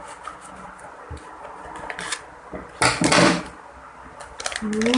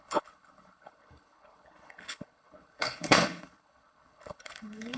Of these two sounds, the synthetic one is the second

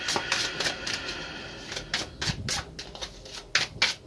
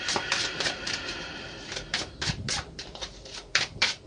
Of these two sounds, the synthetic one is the second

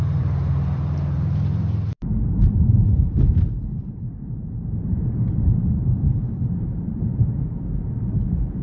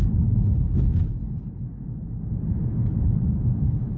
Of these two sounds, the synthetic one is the first